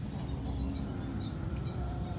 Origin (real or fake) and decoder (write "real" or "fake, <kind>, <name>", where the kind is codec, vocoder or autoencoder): real